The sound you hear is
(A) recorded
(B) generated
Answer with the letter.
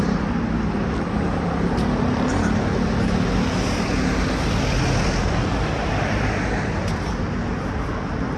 A